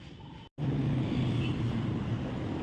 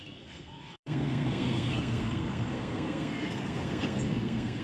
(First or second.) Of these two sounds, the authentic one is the first